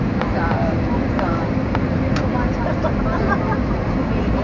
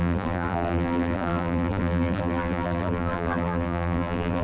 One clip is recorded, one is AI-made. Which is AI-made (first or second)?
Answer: second